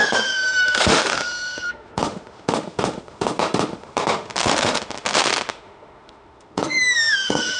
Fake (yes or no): yes